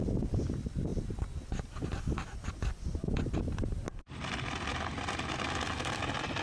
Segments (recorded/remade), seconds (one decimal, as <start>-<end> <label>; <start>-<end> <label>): 0.0-6.4 recorded